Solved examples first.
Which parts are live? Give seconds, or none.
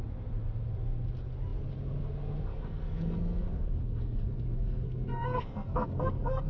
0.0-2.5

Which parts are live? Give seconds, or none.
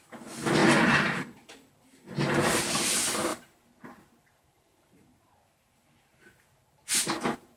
0.0-3.3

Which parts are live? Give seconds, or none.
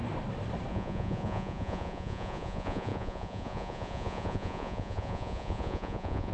0.0-0.7